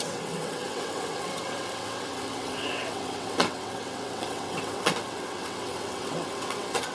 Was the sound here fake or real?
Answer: fake